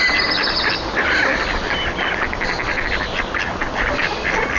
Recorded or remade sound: recorded